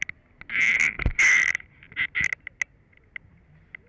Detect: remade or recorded recorded